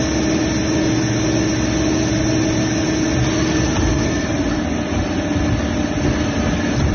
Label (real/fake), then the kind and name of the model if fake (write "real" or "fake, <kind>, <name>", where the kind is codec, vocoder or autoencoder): real